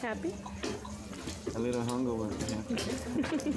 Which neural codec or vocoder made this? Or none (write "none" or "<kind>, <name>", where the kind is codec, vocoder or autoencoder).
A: none